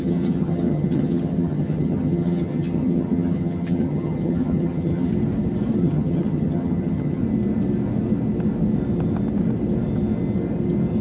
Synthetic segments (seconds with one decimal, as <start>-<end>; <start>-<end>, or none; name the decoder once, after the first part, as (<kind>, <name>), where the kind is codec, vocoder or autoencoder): 0.0-5.1 (vocoder, HiFi-GAN); 5.8-7.2